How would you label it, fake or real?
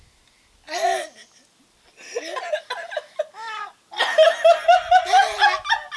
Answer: real